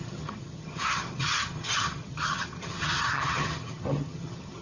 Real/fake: fake